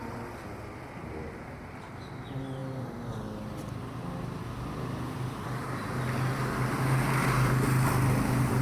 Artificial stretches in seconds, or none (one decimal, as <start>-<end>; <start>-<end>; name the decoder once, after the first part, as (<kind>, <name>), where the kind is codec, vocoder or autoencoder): 1.0-1.6 (vocoder, BigVGAN v2)